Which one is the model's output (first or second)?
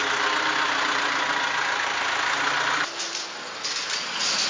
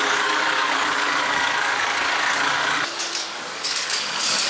second